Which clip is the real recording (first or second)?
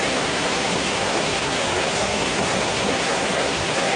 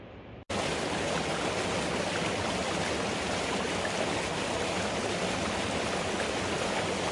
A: second